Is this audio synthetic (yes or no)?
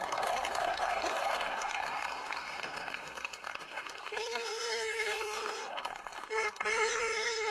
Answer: yes